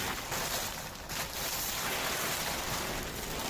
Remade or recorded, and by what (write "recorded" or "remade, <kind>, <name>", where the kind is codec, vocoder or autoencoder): recorded